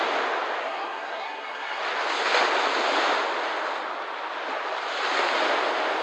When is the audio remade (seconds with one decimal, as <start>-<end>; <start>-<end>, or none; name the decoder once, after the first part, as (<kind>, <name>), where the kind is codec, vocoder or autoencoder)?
0.6-1.8 (codec, SNAC)